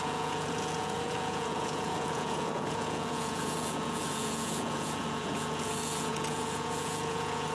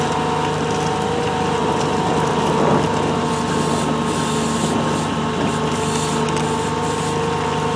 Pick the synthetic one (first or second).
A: first